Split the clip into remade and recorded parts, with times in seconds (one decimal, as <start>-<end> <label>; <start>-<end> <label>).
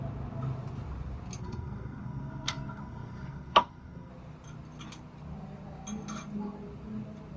0.0-1.4 recorded; 1.4-4.1 remade; 4.1-7.4 recorded